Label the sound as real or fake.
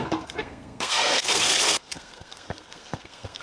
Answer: fake